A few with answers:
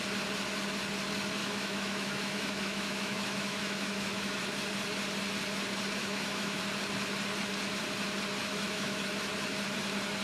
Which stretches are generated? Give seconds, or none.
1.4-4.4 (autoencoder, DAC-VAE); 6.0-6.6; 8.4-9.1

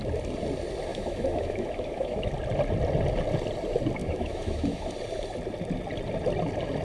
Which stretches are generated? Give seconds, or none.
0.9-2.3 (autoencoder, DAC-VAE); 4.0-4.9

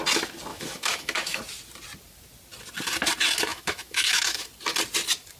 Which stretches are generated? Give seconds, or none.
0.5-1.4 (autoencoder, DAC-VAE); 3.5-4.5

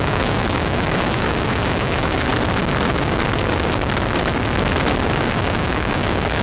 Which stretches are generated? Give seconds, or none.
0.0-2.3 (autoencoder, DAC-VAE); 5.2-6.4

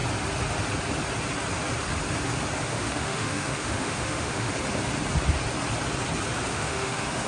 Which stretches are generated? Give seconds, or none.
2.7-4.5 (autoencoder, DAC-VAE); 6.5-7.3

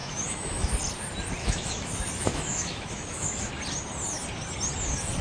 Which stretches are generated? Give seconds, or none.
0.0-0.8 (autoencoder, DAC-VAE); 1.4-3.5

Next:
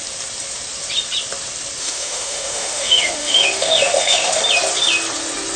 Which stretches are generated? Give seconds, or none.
1.8-4.4 (autoencoder, DAC-VAE)